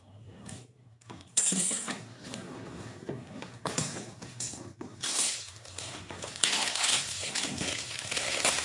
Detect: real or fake fake